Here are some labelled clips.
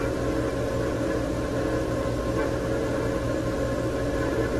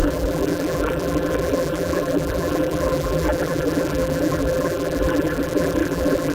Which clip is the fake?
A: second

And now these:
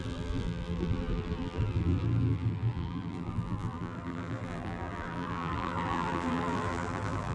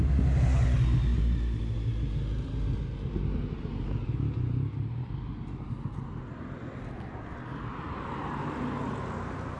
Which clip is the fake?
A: first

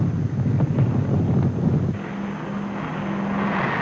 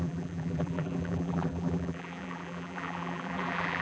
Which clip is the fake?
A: second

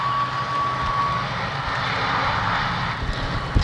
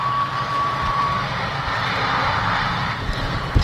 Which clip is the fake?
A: second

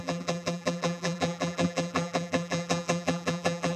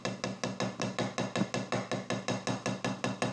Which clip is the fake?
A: first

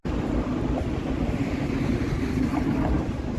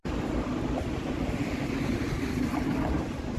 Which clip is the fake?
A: second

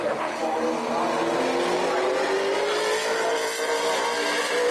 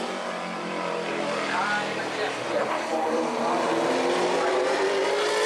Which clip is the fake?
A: second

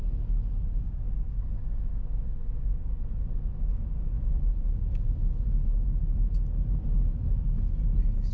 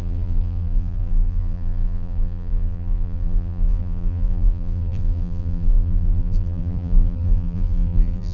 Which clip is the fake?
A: second